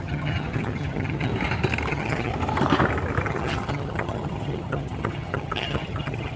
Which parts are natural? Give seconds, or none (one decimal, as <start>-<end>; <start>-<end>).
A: 1.3-1.9; 2.3-3.3